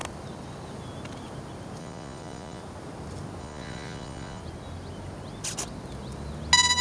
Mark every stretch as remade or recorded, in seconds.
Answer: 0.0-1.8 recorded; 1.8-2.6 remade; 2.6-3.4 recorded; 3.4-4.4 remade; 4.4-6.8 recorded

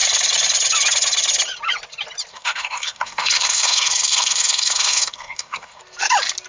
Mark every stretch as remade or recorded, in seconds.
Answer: 0.0-2.3 recorded; 2.3-5.8 remade; 5.8-6.5 recorded

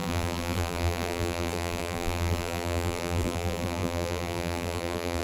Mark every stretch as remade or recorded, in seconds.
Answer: 0.0-5.2 remade